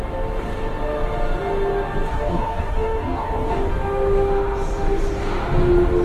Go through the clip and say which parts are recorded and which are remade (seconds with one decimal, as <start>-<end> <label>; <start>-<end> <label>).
0.0-2.1 recorded; 2.1-3.7 remade; 3.7-6.0 recorded